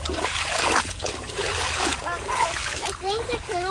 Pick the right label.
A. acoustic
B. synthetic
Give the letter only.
B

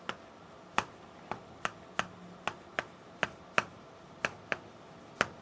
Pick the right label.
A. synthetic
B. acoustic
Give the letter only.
B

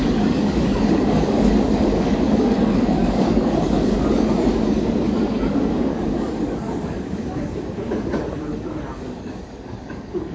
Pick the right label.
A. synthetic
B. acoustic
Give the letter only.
A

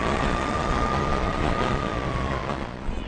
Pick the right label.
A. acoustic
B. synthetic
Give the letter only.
B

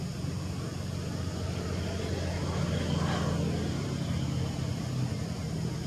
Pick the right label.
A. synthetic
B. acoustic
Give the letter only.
B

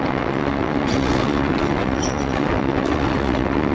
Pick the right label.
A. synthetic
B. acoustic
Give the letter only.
A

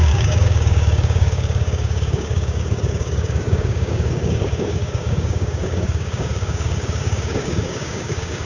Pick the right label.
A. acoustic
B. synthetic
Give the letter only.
B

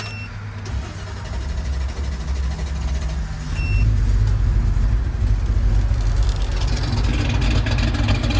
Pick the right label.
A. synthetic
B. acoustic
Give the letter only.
B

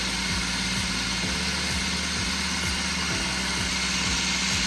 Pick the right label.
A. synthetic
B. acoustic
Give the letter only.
B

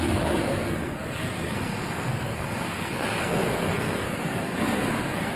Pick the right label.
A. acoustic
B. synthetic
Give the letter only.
B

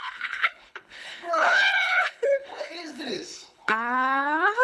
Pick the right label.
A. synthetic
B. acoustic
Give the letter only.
A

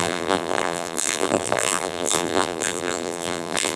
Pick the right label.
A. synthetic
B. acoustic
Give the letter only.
A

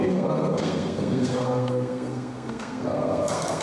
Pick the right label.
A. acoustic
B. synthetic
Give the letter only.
B